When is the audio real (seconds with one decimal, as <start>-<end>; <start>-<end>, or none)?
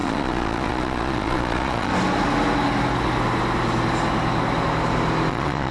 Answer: 1.9-5.3